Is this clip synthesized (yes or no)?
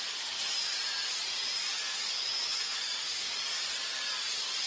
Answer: no